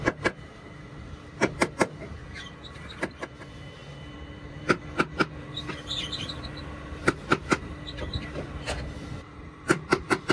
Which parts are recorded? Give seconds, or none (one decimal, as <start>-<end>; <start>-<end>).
none